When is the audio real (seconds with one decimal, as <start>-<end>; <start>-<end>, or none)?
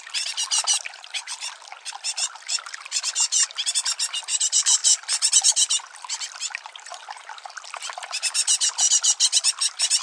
0.0-10.0